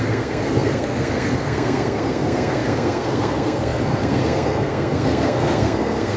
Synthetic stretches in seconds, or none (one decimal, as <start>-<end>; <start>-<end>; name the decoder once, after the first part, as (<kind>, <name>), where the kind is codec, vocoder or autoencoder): 0.0-6.2 (codec, SNAC)